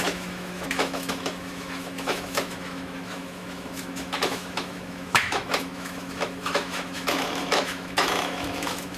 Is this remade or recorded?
remade